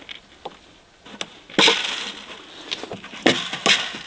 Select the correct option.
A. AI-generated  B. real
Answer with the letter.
B